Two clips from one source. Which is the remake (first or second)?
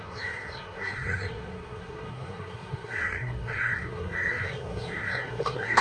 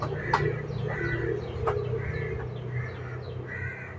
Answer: first